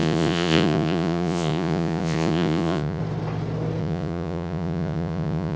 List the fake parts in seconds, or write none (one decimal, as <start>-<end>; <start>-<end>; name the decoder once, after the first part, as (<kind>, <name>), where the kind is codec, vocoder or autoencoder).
0.0-3.0 (vocoder, Vocos); 3.8-5.6